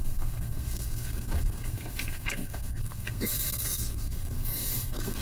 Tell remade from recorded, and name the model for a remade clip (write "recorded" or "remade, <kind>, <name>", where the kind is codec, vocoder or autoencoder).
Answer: remade, codec, SNAC